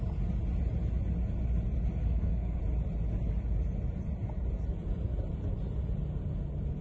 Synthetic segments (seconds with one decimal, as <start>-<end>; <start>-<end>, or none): 2.0-2.6